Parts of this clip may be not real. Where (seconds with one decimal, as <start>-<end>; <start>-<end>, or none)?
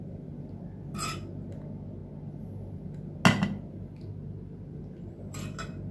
none